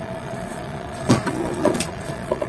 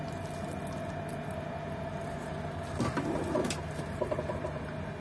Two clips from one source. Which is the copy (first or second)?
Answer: first